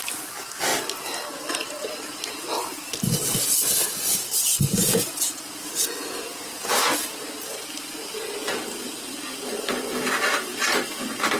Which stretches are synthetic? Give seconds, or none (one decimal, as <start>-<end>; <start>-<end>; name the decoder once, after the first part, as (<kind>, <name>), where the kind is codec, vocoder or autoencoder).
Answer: 4.8-6.7 (vocoder, Vocos)